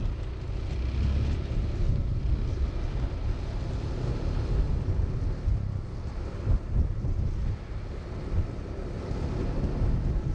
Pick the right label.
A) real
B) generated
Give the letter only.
A